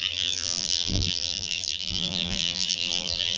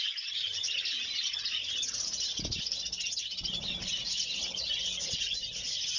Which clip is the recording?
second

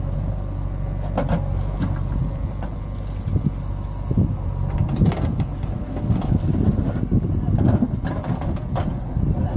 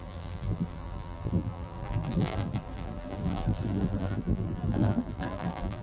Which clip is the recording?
first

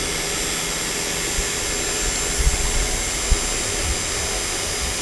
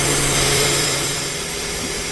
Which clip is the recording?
first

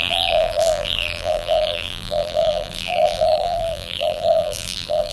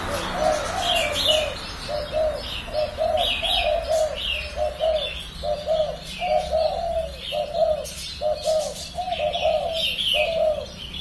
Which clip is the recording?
second